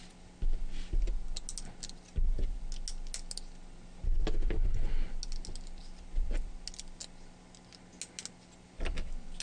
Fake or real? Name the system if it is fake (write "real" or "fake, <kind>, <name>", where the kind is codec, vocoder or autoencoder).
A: real